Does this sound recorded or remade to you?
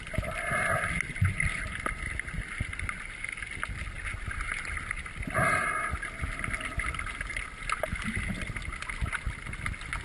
recorded